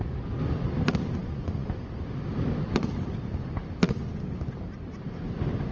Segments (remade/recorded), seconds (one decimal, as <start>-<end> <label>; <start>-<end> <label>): 0.0-1.2 recorded; 1.2-1.9 remade; 1.9-5.7 recorded